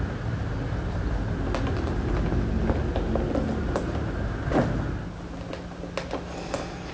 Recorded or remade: recorded